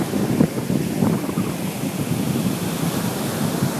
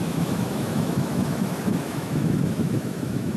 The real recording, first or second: first